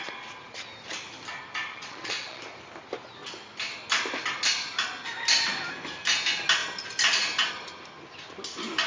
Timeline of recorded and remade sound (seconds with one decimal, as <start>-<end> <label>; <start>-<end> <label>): 0.0-1.7 recorded; 1.7-2.4 remade; 2.4-8.9 recorded